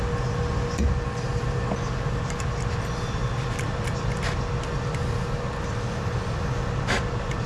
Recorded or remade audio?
recorded